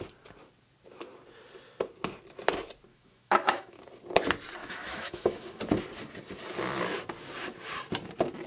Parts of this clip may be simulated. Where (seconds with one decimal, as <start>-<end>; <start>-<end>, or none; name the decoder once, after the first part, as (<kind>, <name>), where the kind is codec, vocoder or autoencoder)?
2.9-3.8 (autoencoder, DAC-VAE); 4.6-5.6